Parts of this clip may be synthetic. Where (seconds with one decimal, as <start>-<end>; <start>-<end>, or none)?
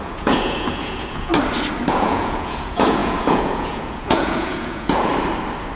0.0-1.3; 1.9-5.1